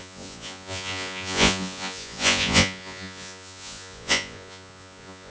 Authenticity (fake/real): fake